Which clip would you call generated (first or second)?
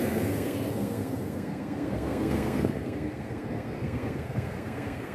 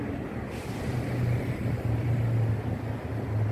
first